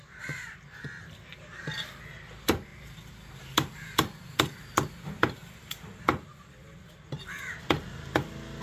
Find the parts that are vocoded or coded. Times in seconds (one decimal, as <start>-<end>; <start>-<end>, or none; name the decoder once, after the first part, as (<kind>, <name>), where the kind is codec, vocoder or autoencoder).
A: 2.7-4.6 (vocoder, BigVGAN v2); 5.4-6.0